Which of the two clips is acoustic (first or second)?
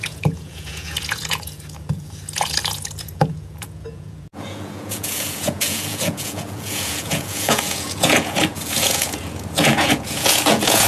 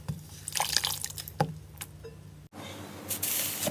second